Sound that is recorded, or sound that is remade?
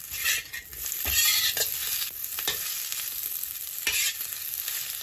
recorded